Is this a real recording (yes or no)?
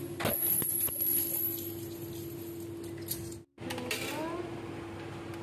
yes